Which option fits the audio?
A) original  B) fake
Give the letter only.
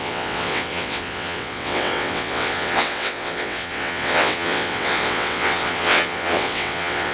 B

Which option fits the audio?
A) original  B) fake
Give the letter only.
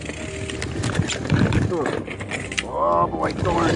A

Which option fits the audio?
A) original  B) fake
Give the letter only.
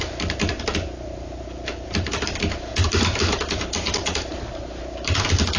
A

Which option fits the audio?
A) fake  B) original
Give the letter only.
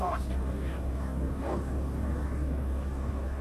A